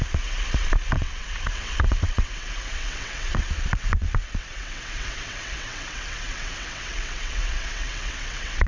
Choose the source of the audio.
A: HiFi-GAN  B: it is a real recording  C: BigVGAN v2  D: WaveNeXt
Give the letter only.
D